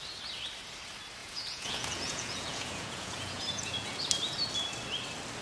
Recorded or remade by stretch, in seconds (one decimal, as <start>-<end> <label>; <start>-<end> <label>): 0.0-1.2 recorded; 1.2-4.0 remade; 4.0-5.4 recorded